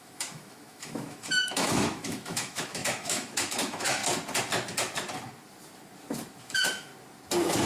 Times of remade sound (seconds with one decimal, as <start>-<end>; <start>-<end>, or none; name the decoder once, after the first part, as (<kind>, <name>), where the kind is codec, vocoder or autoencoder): 0.0-4.0 (autoencoder, DAC-VAE); 6.4-6.9